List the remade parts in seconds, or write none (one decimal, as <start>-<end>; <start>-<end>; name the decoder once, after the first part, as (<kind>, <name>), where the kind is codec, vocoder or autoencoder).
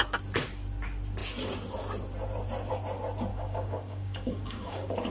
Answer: 3.3-5.1 (codec, DAC)